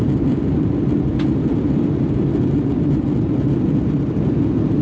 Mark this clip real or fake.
real